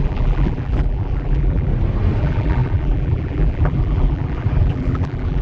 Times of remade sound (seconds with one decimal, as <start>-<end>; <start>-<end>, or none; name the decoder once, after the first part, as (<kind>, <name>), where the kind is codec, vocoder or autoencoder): 0.0-1.7 (vocoder, BigVGAN v2); 2.2-5.4